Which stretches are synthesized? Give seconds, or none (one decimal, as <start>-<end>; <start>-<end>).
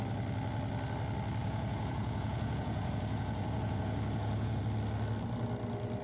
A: 1.4-4.6